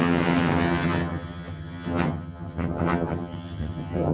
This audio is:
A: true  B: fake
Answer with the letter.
B